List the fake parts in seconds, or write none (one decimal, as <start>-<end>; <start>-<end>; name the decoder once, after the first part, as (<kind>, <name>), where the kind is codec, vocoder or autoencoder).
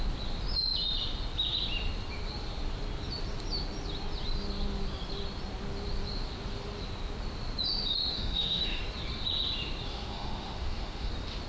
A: 8.1-8.8 (autoencoder, DAC-VAE); 9.9-11.1